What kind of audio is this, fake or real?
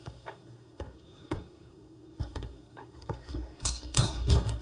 fake